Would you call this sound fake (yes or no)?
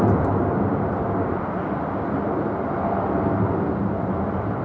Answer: no